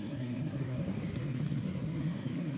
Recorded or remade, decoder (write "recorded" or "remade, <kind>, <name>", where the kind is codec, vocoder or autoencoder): remade, codec, SNAC